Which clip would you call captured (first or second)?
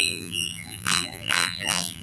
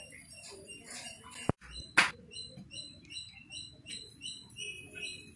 second